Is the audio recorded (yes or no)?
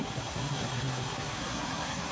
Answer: no